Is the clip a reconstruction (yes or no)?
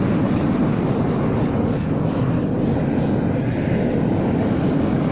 no